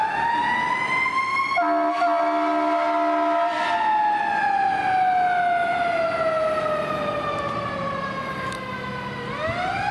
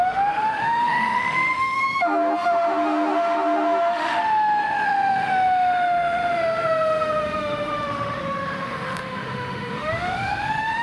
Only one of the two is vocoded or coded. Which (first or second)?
second